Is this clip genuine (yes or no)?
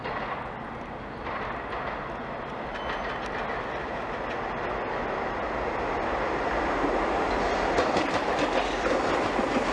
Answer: yes